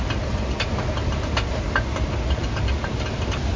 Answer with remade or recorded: recorded